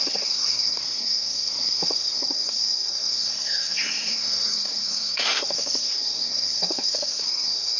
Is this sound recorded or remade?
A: remade